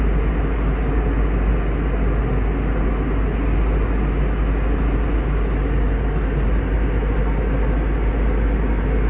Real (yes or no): yes